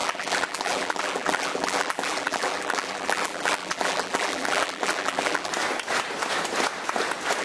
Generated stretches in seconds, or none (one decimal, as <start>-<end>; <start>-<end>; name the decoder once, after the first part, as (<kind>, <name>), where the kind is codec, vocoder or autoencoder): 0.0-5.5 (vocoder, BigVGAN v2)